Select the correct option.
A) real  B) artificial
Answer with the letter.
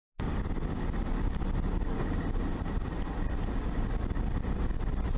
A